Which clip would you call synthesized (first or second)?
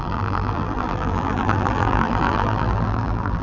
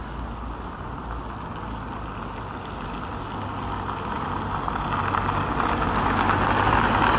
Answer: first